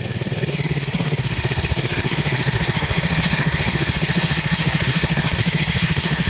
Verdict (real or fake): fake